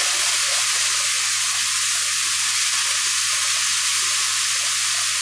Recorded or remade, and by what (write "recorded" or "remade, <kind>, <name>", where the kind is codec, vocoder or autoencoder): recorded